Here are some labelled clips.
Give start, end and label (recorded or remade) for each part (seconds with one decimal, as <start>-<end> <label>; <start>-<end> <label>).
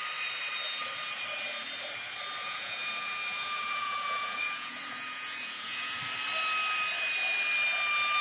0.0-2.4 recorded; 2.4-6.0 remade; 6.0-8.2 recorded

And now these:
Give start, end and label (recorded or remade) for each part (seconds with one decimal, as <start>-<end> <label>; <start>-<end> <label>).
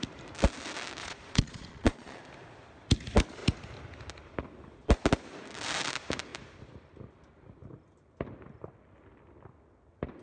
0.0-1.0 recorded; 1.0-2.2 remade; 2.2-10.2 recorded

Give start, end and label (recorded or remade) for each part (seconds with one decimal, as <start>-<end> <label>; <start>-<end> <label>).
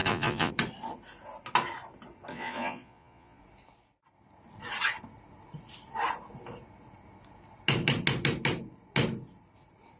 0.0-0.5 remade; 0.5-2.3 recorded; 2.3-3.4 remade; 3.4-10.0 recorded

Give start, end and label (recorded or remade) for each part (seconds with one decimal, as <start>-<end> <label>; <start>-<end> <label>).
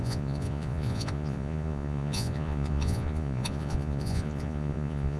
0.0-5.2 remade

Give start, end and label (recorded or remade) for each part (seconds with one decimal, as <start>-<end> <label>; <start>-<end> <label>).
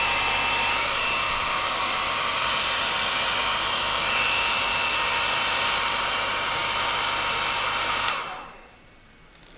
0.0-9.6 recorded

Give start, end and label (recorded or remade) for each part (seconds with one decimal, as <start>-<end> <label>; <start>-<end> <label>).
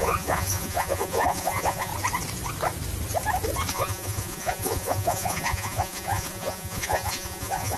0.0-1.9 remade; 1.9-3.7 recorded; 3.7-7.8 remade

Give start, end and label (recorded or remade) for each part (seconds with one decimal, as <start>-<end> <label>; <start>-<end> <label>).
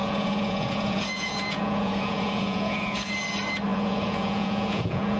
0.0-3.1 remade; 3.1-3.7 recorded; 3.7-5.2 remade